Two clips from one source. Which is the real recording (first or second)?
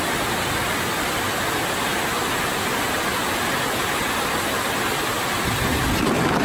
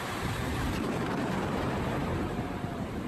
first